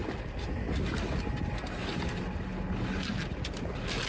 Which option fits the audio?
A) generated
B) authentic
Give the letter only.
B